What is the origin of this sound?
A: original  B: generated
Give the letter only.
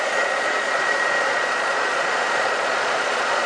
B